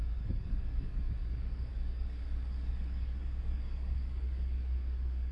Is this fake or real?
fake